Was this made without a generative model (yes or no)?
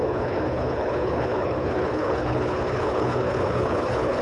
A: no